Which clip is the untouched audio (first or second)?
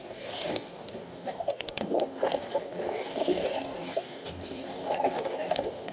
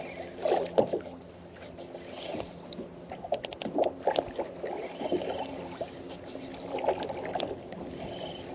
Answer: second